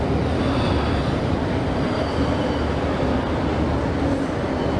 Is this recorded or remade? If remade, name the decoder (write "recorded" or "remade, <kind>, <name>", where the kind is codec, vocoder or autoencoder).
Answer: recorded